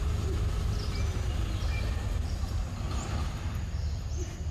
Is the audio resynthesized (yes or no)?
no